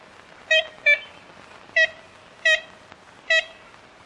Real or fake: real